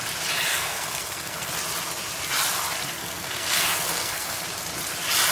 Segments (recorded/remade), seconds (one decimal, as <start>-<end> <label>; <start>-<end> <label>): 0.0-0.5 recorded; 0.5-1.5 remade; 1.5-3.0 recorded; 3.0-4.4 remade; 4.4-5.3 recorded